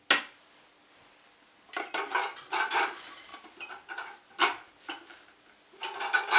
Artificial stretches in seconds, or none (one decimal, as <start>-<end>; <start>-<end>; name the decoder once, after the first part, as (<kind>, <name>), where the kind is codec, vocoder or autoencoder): none